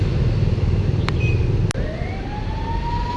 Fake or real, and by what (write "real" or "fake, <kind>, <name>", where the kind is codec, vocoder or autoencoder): real